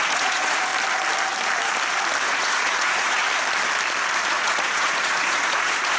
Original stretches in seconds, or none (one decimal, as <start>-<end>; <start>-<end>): 0.7-2.3; 3.2-4.3